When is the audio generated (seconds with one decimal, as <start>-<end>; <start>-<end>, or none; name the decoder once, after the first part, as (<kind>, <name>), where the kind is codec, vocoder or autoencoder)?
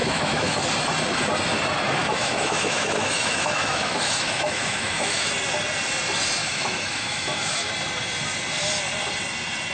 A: 0.0-0.6 (autoencoder, DAC-VAE); 2.0-5.3; 6.4-7.7